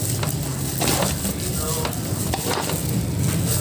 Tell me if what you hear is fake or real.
real